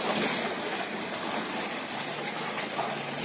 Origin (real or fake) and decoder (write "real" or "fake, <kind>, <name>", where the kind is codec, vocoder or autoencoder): real